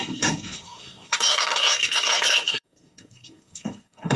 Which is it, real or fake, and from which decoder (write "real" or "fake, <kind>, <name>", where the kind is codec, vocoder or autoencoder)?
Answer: fake, codec, SNAC